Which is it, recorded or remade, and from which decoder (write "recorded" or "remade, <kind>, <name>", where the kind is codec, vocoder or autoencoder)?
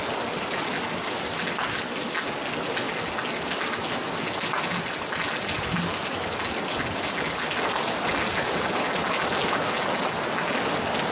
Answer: recorded